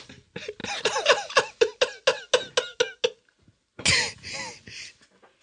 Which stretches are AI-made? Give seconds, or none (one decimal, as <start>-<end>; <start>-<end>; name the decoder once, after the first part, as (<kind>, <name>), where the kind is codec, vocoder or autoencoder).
none